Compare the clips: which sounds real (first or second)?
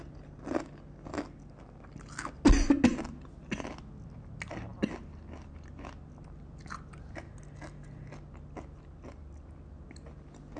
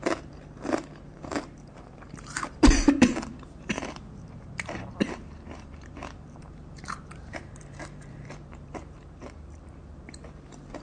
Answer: first